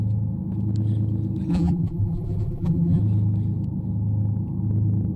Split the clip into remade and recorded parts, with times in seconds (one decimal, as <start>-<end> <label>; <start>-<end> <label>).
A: 0.0-1.5 recorded; 1.5-3.0 remade; 3.0-5.2 recorded